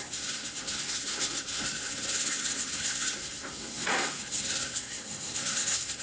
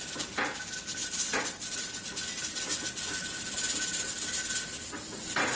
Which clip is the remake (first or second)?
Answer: first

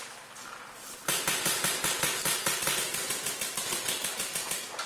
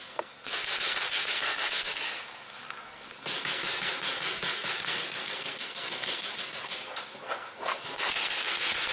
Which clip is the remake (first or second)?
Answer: second